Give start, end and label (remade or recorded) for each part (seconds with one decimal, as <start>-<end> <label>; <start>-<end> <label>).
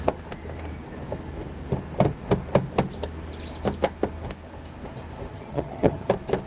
0.0-5.3 recorded; 5.3-6.1 remade; 6.1-6.5 recorded